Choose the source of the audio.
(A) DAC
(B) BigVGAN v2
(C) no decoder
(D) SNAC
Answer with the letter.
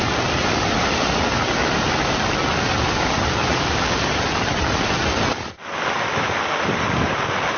C